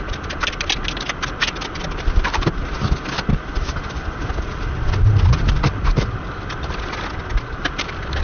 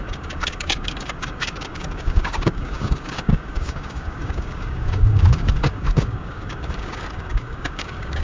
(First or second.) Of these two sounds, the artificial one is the second